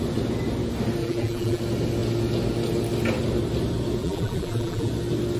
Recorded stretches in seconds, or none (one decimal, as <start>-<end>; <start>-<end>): 0.0-1.0; 1.6-4.0; 4.9-5.4